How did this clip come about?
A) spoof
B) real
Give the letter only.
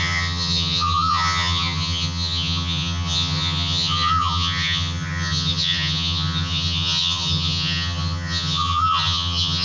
A